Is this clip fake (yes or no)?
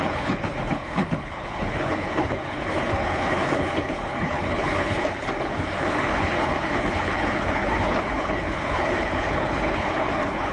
yes